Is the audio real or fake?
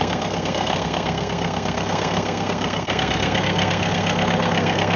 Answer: fake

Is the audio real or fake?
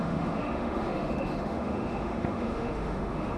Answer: fake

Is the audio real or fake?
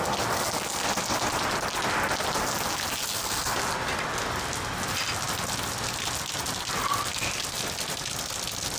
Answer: real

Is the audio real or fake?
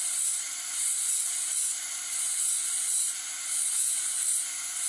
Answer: real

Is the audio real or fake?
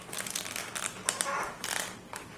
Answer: real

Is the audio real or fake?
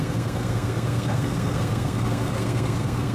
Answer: fake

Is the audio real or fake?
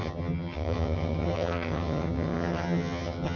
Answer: fake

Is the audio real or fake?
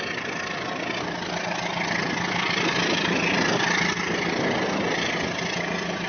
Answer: real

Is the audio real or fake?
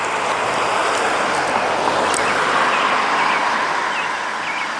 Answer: real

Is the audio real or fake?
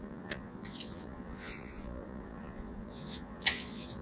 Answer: fake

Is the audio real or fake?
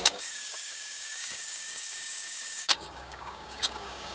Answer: fake